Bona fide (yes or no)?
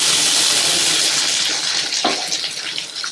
yes